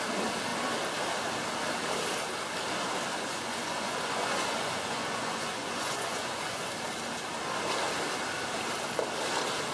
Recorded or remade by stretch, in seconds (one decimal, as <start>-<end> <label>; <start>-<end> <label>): 0.0-3.1 recorded; 3.1-6.7 remade; 6.7-9.7 recorded